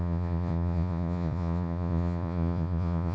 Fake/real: fake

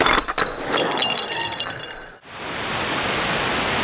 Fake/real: real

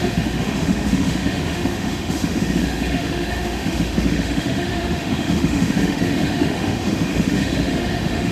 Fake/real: fake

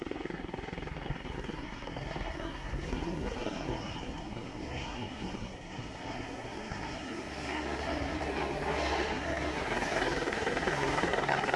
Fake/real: fake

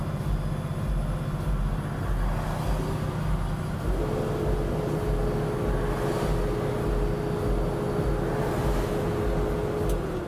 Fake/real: real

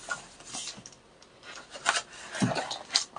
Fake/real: real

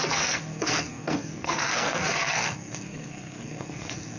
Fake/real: fake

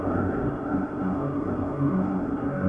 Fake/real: fake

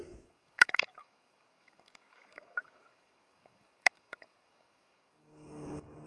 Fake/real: fake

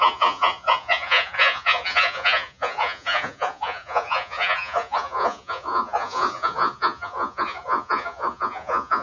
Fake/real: fake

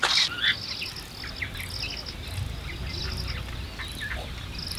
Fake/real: real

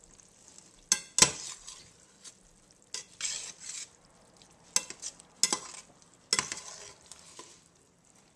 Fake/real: real